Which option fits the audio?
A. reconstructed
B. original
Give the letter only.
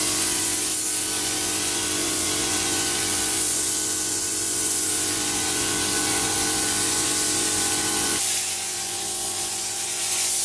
A